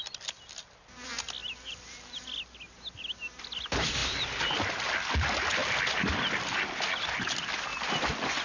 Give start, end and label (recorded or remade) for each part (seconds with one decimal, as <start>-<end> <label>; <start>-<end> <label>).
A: 0.0-8.4 recorded